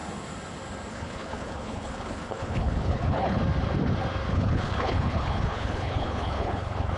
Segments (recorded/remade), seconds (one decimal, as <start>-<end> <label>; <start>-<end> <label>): 0.0-0.9 recorded; 0.9-3.4 remade; 3.4-4.3 recorded; 4.3-7.0 remade